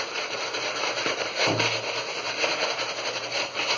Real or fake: fake